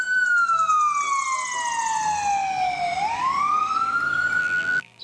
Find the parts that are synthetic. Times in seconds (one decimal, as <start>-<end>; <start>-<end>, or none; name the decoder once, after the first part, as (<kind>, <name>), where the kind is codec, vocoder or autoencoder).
4.4-5.0 (vocoder, BigVGAN v2)